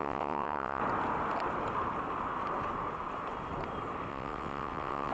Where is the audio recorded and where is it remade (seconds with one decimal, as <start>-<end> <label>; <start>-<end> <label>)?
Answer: 0.0-0.8 remade; 0.8-4.1 recorded; 4.1-5.1 remade